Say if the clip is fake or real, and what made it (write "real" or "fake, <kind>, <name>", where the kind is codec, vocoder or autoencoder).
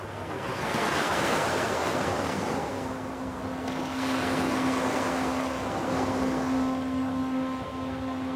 fake, codec, SNAC